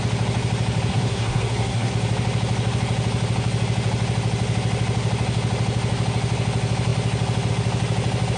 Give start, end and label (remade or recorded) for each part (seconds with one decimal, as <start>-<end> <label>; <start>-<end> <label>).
0.0-0.9 recorded; 0.9-1.9 remade; 1.9-8.4 recorded